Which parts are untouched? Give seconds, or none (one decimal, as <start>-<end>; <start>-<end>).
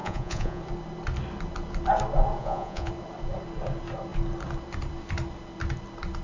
0.6-2.4; 2.9-6.2